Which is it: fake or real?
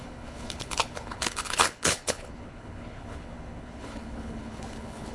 fake